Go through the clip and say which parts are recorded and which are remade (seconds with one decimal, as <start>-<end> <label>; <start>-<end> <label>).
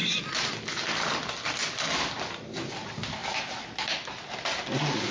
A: 0.0-5.1 recorded